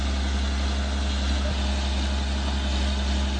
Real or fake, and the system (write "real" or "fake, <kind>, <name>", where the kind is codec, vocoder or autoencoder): real